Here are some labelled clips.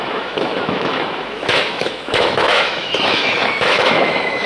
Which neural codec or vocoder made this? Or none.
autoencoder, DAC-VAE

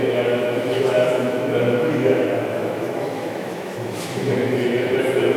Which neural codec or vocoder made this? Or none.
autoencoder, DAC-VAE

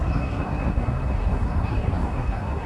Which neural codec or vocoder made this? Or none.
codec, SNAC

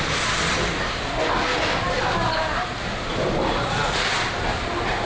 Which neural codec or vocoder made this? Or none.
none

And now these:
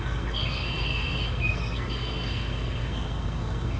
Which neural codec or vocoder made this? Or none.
codec, SNAC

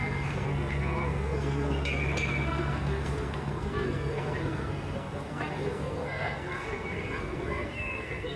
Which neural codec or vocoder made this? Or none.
codec, SNAC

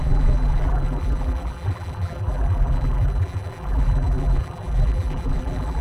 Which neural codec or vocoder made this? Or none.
vocoder, BigVGAN v2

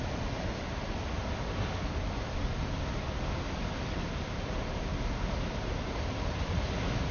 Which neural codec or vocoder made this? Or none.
none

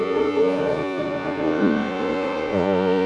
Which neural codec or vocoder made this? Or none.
vocoder, Vocos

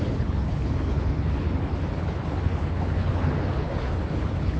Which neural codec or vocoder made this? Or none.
codec, HILCodec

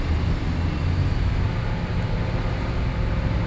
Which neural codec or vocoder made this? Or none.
none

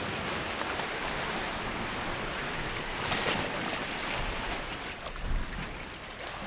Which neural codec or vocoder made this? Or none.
none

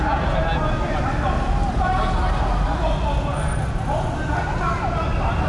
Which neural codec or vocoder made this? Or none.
none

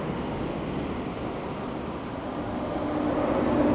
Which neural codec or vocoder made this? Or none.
none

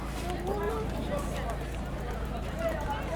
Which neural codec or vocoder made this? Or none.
none